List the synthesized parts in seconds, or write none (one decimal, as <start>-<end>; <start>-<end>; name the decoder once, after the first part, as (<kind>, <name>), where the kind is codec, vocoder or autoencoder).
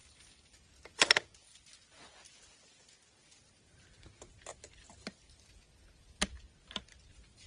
none